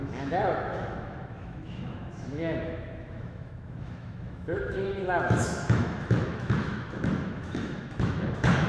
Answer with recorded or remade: remade